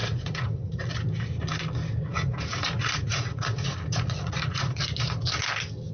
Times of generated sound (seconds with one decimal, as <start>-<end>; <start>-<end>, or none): 0.0-0.8; 2.1-4.8